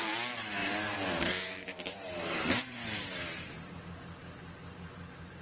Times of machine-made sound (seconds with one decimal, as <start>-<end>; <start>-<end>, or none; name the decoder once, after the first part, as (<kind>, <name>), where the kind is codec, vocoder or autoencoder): 0.6-3.8 (vocoder, BigVGAN v2)